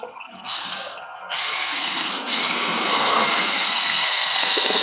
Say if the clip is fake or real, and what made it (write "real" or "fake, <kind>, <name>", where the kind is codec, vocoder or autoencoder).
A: fake, codec, SNAC